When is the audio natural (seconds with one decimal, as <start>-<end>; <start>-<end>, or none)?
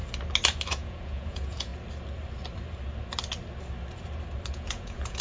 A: 0.0-0.7; 1.7-4.5